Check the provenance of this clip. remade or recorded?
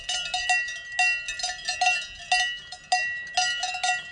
recorded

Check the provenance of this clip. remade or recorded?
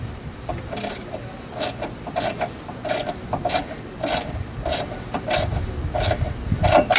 remade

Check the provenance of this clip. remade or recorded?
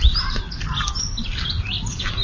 recorded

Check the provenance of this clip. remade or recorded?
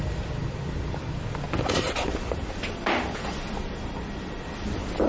remade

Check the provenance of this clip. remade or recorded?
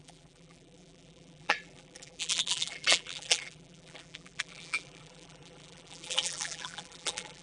remade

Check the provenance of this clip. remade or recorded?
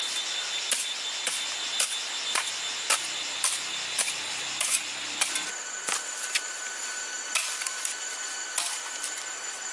recorded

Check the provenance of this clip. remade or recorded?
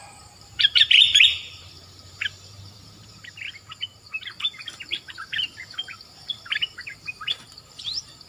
remade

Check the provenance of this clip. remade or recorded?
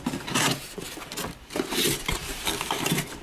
remade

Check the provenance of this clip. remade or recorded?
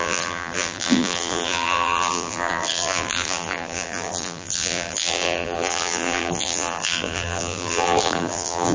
remade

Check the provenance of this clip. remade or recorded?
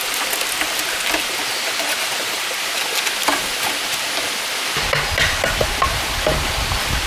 recorded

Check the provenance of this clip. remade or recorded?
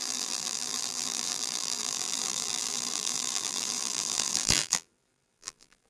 remade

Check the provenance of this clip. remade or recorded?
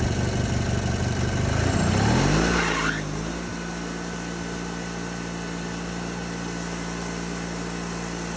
recorded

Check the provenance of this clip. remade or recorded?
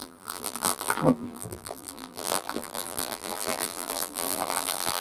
remade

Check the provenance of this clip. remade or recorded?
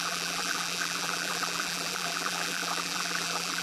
remade